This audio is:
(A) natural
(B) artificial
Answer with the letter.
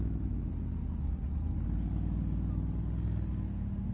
A